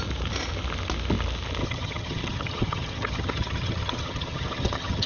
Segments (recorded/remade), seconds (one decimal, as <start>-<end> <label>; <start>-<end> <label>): 0.0-1.6 recorded; 1.6-5.1 remade